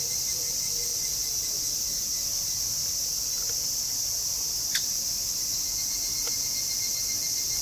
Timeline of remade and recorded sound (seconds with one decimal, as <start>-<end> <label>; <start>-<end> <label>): 0.0-7.6 recorded